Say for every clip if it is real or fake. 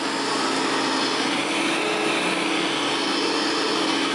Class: real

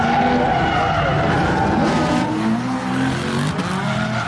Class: real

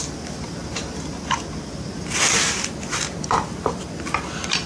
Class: real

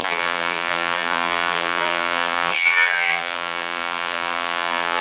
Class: fake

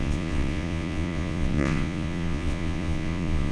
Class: fake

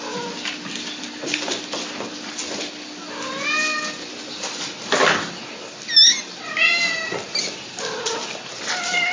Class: real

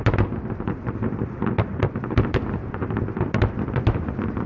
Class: fake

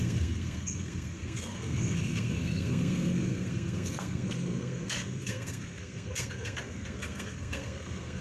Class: fake